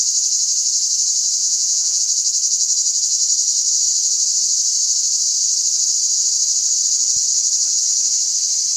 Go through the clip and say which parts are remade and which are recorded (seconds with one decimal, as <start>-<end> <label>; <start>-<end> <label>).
0.0-1.4 recorded; 1.4-2.0 remade; 2.0-8.8 recorded